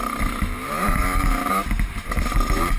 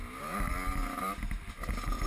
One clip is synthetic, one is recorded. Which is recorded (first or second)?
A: second